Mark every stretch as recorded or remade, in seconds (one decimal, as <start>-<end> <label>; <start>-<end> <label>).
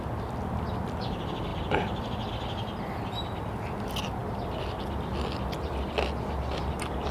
0.0-7.1 recorded